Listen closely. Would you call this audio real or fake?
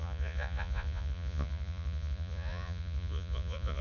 fake